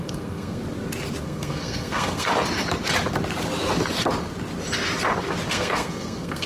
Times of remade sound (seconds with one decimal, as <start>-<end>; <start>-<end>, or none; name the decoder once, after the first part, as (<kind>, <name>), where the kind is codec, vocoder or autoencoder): 0.0-0.6 (codec, SNAC); 1.2-2.3; 5.5-6.5